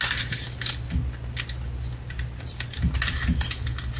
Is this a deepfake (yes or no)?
no